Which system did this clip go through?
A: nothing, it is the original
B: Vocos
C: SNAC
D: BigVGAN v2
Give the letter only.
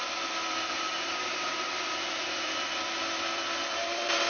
D